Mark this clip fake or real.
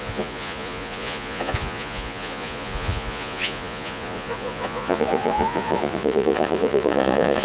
fake